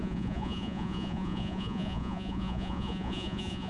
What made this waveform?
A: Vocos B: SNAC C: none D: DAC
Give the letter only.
A